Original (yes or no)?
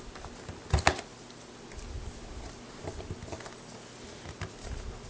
yes